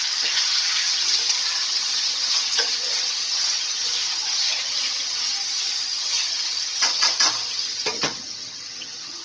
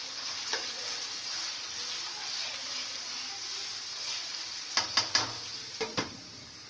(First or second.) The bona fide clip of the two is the second